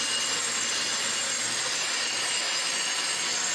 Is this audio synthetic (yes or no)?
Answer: no